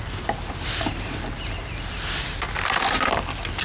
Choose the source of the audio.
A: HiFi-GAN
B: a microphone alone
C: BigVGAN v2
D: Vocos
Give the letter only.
B